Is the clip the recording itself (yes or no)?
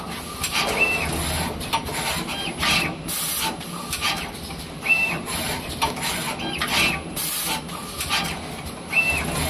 yes